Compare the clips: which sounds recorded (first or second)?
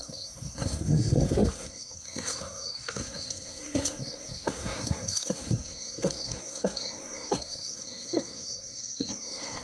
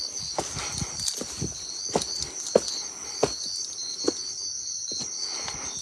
second